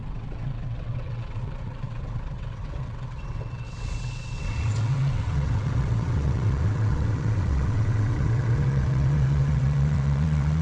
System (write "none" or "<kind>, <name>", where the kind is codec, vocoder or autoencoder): vocoder, WaveNeXt